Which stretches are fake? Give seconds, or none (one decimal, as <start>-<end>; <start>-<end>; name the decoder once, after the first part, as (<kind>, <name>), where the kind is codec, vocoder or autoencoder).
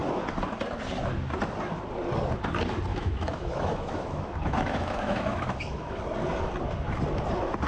2.9-6.0 (autoencoder, DAC-VAE)